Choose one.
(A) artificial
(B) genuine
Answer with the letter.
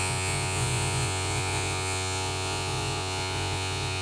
A